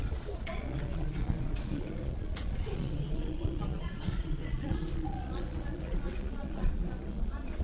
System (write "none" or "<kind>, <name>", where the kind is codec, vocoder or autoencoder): vocoder, Vocos